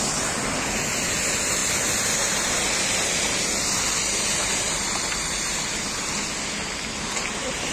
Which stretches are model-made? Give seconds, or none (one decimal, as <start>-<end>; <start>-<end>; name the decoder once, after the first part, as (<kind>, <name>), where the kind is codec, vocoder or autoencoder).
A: none